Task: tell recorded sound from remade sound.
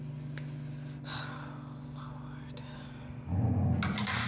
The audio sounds recorded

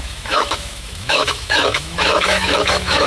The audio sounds remade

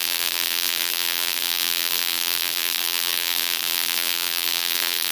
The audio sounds remade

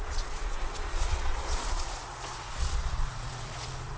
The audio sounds remade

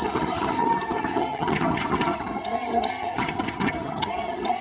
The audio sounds remade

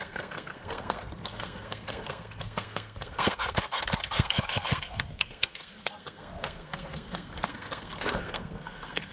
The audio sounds remade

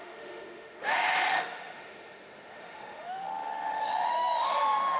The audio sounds remade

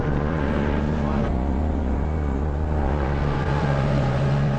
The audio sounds remade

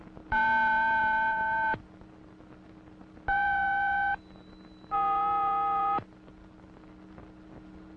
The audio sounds recorded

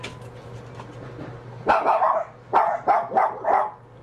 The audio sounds recorded